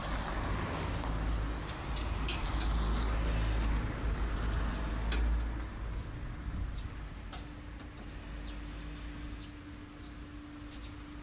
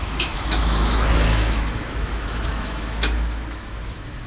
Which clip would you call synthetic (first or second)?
second